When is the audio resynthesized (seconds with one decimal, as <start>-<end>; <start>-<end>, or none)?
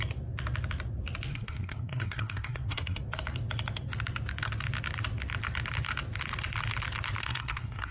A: 1.3-3.0; 7.2-7.9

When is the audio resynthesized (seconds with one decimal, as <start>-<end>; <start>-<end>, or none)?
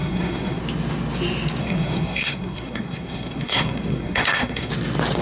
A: 0.0-0.6; 1.6-4.7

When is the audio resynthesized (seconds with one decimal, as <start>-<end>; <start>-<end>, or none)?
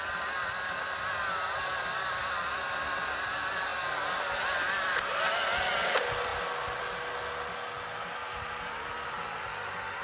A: none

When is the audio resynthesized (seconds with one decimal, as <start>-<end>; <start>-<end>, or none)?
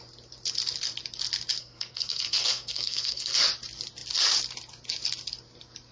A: 1.6-3.4